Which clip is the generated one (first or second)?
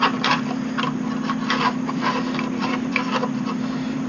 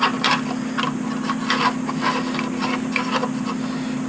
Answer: first